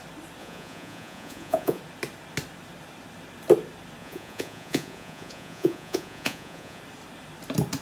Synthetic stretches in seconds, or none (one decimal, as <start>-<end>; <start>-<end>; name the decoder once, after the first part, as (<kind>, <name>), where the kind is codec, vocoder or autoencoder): 0.4-1.8 (vocoder, Vocos); 4.0-6.8